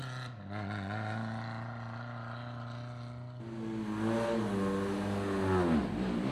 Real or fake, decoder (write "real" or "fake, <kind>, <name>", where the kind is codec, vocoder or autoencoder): real